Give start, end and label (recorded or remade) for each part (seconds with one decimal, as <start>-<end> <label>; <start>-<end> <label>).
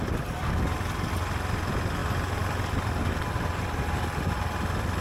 0.0-5.0 recorded